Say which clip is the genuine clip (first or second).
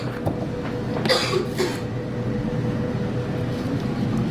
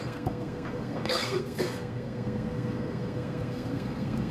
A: first